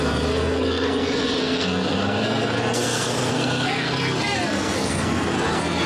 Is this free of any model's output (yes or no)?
no